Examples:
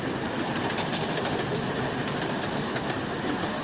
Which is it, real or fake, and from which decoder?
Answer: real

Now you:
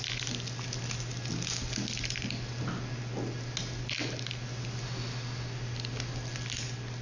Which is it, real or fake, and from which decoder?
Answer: real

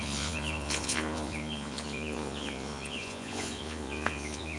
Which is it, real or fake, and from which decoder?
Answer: fake, vocoder, Vocos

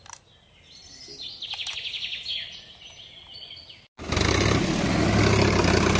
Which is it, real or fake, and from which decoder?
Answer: real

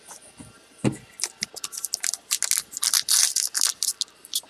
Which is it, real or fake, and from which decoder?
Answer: real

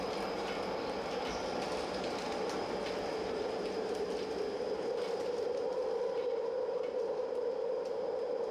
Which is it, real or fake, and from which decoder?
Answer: real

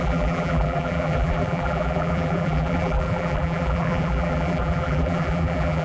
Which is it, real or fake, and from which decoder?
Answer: fake, vocoder, BigVGAN v2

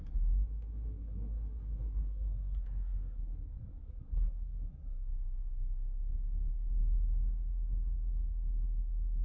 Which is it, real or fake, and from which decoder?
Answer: fake, codec, SNAC